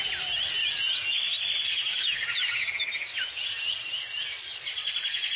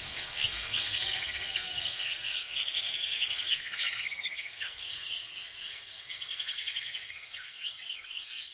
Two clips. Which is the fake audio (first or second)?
second